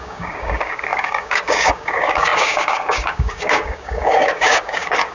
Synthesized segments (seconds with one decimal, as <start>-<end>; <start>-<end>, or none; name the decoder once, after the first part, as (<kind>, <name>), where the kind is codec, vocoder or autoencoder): 0.0-5.1 (codec, DAC)